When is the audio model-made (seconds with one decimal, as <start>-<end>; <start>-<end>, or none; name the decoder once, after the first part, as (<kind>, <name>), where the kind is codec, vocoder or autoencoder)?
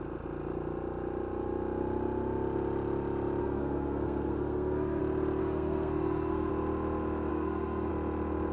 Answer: 3.4-5.0 (codec, SNAC); 5.4-6.5; 7.3-7.9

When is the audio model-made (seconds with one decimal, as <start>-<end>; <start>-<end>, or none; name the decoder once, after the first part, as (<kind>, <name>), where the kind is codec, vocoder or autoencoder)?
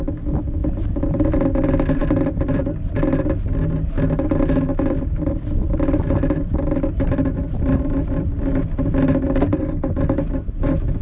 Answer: 0.6-1.5 (vocoder, BigVGAN v2); 2.0-2.6; 4.7-8.2; 9.6-10.2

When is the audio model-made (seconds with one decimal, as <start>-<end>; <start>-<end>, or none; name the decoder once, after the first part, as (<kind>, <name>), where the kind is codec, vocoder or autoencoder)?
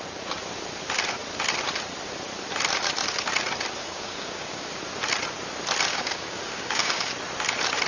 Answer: 3.8-4.8 (codec, DAC); 5.9-7.1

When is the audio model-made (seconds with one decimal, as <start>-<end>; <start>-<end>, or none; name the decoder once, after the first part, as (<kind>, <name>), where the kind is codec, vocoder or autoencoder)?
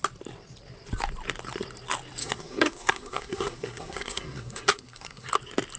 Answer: 2.2-5.3 (codec, SNAC)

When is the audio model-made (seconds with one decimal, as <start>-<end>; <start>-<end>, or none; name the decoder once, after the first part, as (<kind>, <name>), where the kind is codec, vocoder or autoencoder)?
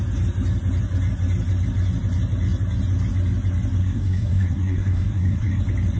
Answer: 3.8-5.6 (codec, SNAC)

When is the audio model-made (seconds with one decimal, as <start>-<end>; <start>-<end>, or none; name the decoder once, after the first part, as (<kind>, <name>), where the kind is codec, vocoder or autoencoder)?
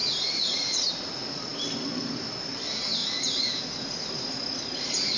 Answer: 0.0-0.9 (vocoder, Vocos)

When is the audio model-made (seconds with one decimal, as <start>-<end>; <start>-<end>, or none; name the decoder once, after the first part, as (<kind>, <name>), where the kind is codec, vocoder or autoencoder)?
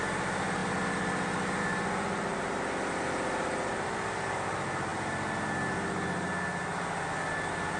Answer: none